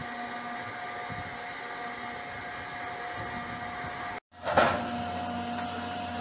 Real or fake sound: real